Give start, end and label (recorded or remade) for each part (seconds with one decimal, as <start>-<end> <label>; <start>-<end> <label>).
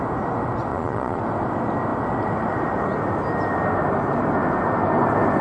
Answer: 0.0-0.7 recorded; 0.7-1.2 remade; 1.2-5.4 recorded